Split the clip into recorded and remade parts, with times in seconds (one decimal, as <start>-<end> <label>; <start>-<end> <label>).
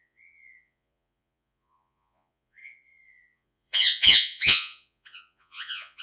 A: 0.0-6.0 remade